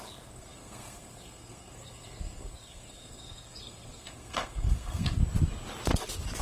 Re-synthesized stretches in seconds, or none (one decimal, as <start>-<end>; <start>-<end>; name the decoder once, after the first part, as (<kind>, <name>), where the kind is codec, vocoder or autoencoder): 0.0-5.2 (codec, SNAC)